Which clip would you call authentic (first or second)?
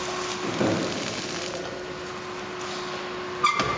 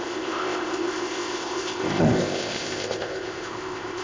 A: first